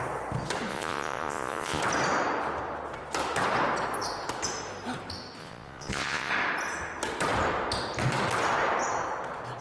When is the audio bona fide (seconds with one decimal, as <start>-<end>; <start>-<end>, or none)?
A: 0.0-0.7; 1.8-5.4; 6.3-9.6